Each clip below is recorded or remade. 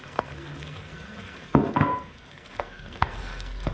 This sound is remade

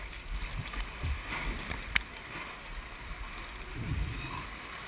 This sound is recorded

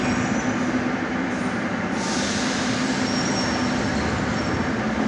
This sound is recorded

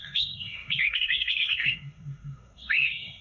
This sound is remade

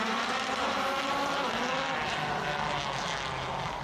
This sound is recorded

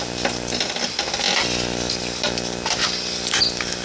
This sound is recorded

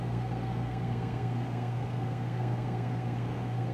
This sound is remade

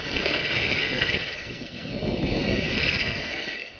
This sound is remade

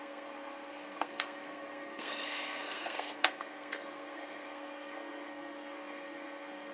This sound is remade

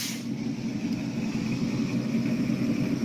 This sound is recorded